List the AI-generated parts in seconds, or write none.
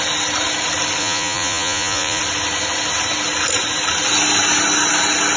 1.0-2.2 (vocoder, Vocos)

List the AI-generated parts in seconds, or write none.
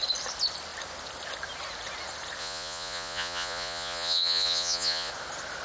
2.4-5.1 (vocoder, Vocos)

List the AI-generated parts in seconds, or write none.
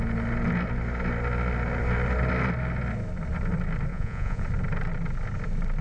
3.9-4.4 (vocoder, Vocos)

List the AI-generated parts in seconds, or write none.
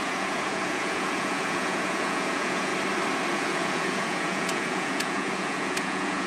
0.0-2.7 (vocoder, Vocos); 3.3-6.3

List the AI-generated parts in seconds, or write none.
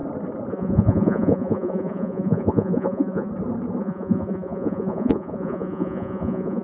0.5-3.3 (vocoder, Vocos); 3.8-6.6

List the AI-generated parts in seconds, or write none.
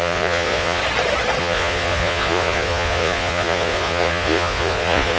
0.0-0.8 (vocoder, Vocos); 1.4-5.2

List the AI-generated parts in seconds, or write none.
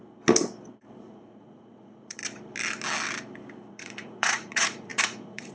1.0-2.2 (vocoder, Vocos); 3.7-5.5